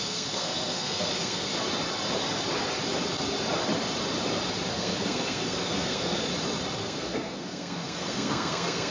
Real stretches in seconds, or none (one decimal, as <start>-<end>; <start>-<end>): 1.5-4.7; 6.3-6.8